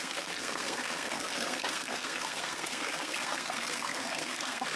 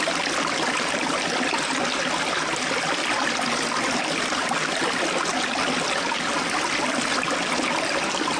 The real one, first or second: second